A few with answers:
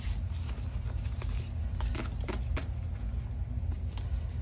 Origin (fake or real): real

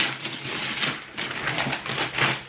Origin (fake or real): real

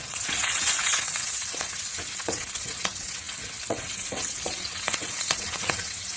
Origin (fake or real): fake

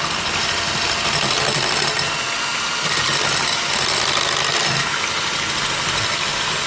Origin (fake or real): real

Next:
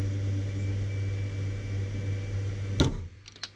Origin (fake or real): real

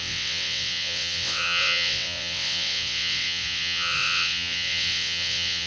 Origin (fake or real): fake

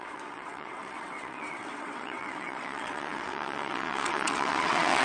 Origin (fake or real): fake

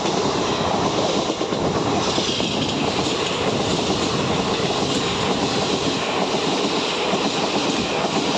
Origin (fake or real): real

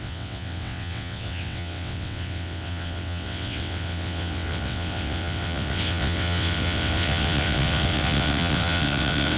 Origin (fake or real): fake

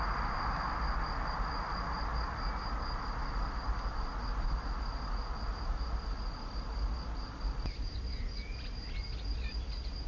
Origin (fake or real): real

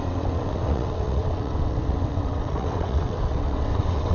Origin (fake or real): fake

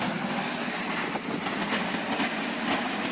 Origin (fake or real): real